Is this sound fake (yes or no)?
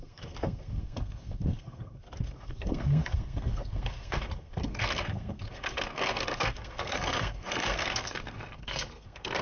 yes